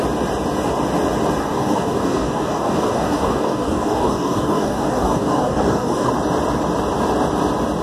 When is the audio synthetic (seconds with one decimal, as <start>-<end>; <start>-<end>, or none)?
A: 1.4-6.1